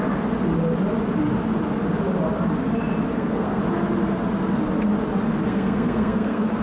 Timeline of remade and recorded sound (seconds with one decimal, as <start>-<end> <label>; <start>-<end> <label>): 0.0-3.1 recorded; 3.1-3.6 remade; 3.6-5.5 recorded; 5.5-6.6 remade